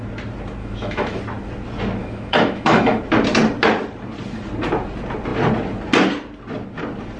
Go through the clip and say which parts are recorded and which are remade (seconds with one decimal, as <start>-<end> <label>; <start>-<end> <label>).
0.0-0.6 recorded; 0.6-1.2 remade; 1.2-2.0 recorded; 2.0-3.0 remade; 3.0-7.2 recorded